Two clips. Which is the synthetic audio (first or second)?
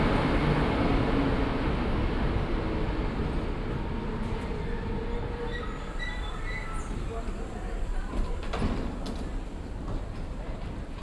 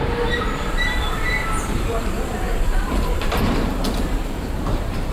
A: second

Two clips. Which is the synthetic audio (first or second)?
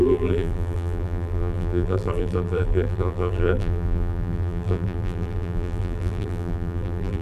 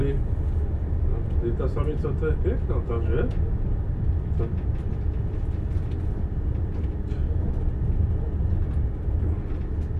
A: first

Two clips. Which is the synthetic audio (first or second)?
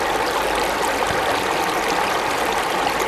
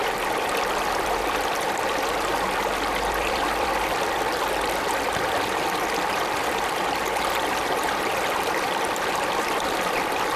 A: second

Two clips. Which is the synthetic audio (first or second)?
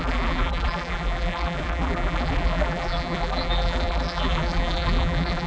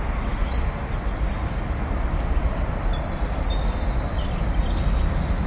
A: first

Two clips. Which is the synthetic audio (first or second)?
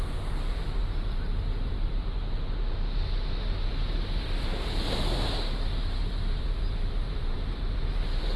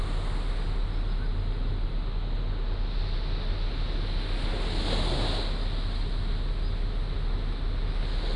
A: first